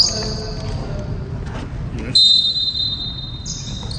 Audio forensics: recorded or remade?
recorded